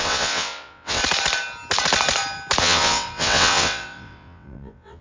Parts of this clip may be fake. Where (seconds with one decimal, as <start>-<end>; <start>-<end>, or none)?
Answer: 0.0-1.0; 2.6-5.0